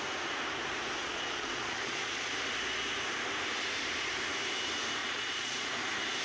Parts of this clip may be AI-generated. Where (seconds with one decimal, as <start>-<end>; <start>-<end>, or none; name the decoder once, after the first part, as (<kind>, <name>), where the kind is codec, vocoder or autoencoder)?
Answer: 1.0-2.3 (vocoder, Vocos); 5.0-5.7